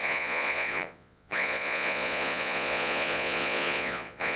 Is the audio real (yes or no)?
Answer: no